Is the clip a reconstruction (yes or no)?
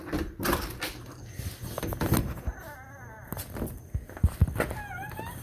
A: no